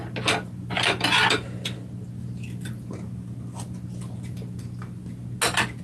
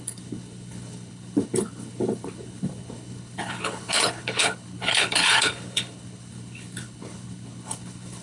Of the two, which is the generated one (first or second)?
second